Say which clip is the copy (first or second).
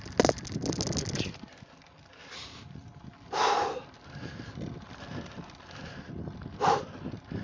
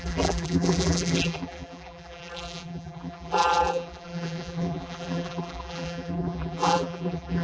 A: second